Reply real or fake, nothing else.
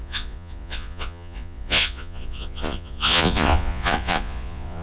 fake